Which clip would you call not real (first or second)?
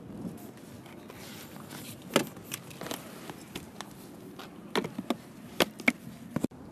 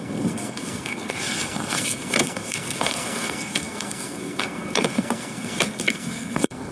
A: second